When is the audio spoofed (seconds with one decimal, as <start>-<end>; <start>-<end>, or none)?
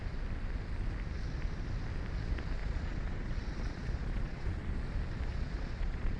2.6-4.6; 5.3-6.2